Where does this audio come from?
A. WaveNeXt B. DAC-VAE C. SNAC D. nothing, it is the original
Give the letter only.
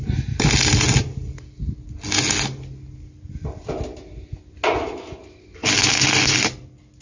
D